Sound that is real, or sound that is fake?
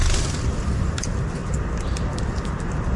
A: real